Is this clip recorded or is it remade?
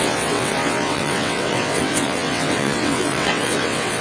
remade